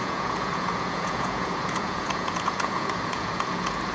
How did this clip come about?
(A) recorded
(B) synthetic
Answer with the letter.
B